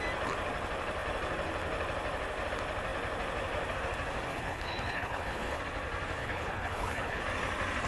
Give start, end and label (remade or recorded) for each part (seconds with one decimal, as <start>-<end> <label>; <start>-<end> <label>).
0.0-4.3 recorded; 4.3-5.6 remade; 5.6-6.2 recorded; 6.2-7.2 remade; 7.2-7.9 recorded